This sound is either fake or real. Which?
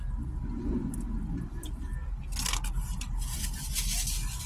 real